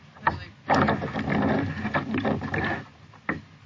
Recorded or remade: recorded